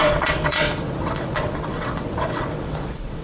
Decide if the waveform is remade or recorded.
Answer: remade